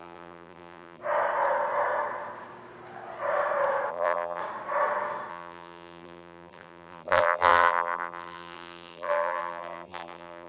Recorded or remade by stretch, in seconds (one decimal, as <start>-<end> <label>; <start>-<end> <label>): 0.0-1.0 remade; 1.0-3.9 recorded; 3.9-4.4 remade; 4.4-5.3 recorded; 5.3-10.5 remade